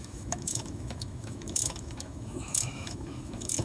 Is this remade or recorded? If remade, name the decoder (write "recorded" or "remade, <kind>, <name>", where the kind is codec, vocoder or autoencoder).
remade, autoencoder, DAC-VAE